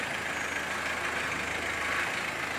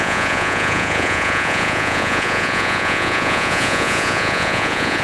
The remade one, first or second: second